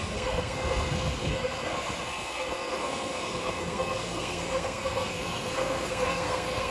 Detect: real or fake fake